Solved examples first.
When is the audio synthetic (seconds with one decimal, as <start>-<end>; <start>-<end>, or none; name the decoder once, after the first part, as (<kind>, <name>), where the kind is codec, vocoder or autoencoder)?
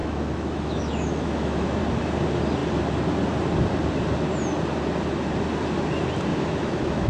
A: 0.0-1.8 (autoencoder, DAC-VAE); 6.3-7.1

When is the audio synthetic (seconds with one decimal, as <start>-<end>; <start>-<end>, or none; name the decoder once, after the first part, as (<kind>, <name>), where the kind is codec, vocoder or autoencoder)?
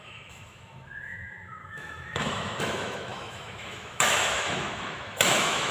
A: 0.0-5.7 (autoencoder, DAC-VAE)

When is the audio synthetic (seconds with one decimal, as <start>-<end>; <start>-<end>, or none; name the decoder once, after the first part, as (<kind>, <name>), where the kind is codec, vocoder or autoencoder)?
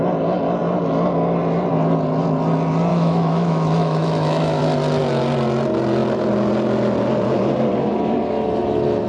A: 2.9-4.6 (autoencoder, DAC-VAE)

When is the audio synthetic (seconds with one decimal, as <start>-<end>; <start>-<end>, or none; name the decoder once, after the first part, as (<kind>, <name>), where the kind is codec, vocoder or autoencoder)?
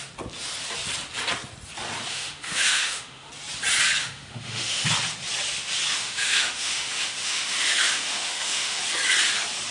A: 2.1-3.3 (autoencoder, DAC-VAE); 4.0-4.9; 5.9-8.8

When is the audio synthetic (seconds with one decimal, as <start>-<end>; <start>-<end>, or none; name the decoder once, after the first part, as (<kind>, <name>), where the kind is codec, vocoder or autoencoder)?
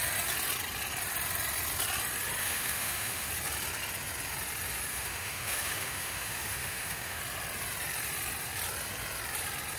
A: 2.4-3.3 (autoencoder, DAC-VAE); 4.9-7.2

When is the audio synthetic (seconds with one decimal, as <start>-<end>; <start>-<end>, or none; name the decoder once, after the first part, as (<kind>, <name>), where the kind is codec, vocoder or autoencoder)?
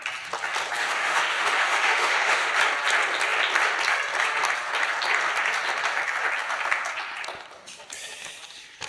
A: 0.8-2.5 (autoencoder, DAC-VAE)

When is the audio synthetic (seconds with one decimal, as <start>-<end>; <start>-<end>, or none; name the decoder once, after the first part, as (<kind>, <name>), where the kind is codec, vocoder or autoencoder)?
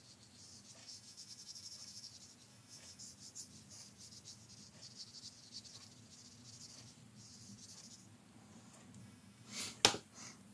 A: 0.8-2.1 (autoencoder, DAC-VAE); 2.5-3.0; 9.0-9.6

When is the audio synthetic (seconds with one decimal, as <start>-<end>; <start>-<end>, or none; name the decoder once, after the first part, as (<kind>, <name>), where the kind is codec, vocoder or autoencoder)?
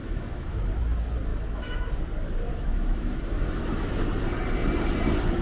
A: 0.0-0.7 (autoencoder, DAC-VAE); 1.3-2.0; 2.5-3.9